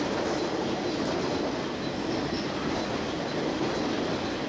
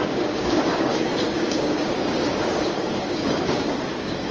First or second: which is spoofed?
second